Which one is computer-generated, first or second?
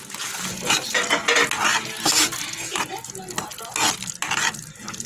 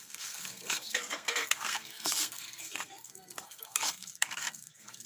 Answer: second